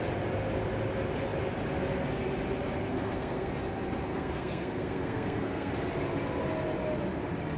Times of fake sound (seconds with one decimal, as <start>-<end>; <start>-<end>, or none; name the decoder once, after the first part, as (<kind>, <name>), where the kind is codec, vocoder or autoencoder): 2.9-3.5 (codec, SNAC); 4.1-5.7